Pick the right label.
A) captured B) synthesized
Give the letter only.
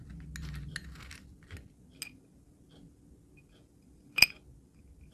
A